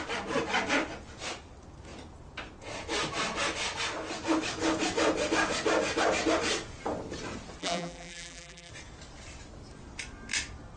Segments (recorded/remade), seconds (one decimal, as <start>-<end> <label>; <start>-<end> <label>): 0.0-7.6 recorded; 7.6-8.7 remade; 8.7-10.8 recorded